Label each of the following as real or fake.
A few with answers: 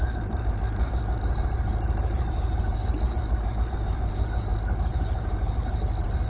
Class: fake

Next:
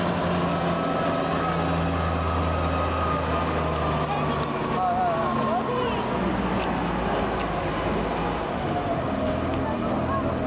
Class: real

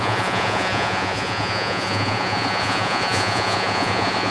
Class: fake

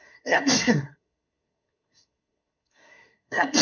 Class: fake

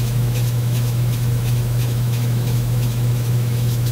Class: fake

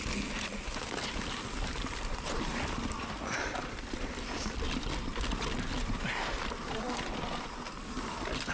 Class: real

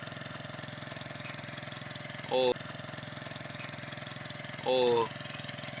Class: real